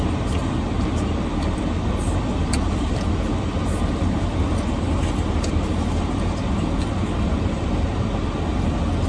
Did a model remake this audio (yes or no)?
yes